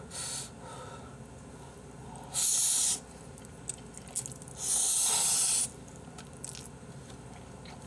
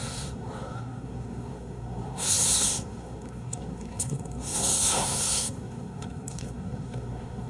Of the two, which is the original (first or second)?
first